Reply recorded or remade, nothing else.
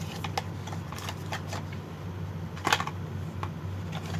recorded